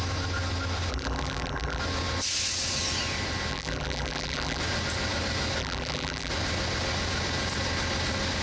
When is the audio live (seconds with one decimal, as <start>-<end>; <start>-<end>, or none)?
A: 0.0-0.9; 1.8-3.5; 4.6-5.6; 6.3-8.4